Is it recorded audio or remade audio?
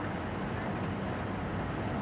recorded